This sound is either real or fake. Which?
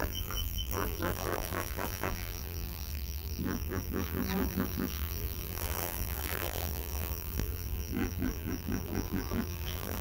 fake